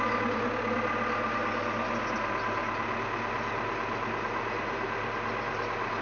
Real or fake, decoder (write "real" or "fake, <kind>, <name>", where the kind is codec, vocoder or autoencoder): real